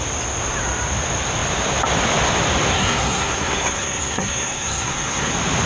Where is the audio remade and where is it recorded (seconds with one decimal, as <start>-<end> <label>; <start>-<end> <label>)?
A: 0.0-2.7 recorded; 2.7-5.3 remade; 5.3-5.7 recorded